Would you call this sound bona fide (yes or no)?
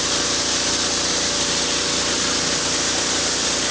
yes